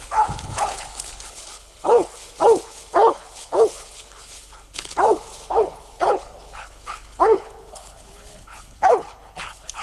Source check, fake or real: fake